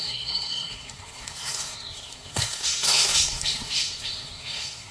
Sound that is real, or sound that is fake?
fake